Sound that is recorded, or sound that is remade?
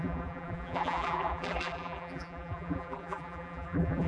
remade